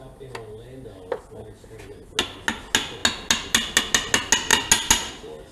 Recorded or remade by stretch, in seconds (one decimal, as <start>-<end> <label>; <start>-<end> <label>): 0.0-5.5 recorded